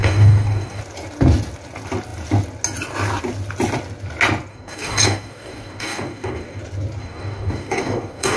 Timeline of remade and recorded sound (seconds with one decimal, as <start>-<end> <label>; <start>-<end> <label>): 0.0-0.8 remade; 0.8-4.5 recorded; 4.5-6.6 remade; 6.6-7.0 recorded; 7.0-8.4 remade